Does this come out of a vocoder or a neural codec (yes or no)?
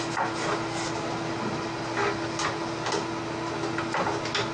no